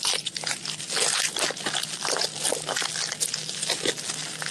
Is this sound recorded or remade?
recorded